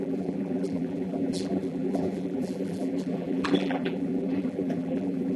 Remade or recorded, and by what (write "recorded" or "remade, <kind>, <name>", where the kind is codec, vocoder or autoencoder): remade, vocoder, BigVGAN v2